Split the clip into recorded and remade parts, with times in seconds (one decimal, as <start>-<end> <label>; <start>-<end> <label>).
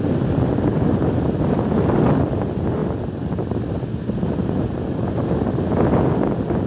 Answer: 0.0-6.7 recorded